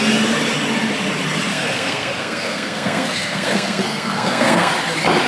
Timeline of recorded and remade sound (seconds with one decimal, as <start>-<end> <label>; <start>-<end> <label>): 0.0-1.5 recorded; 1.5-4.7 remade; 4.7-5.3 recorded